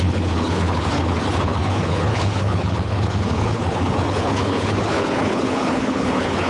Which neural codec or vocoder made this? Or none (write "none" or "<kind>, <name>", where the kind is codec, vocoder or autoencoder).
codec, HILCodec